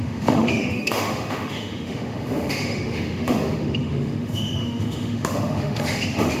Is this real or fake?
fake